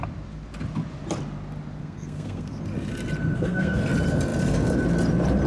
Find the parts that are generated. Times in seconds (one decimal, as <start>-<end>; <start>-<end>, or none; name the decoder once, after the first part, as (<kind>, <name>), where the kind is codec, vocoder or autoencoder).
1.8-2.6 (codec, SNAC); 3.3-3.8